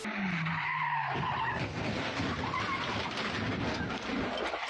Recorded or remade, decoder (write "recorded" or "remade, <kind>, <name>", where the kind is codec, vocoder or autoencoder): recorded